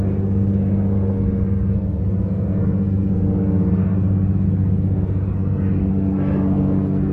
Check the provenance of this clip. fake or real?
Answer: fake